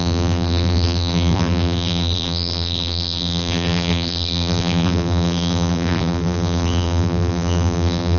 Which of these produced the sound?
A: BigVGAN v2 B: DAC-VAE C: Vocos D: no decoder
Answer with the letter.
A